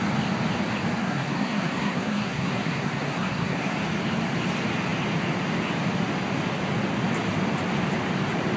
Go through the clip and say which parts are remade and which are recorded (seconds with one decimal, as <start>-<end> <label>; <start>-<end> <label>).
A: 0.0-1.0 recorded; 1.0-3.8 remade; 3.8-8.6 recorded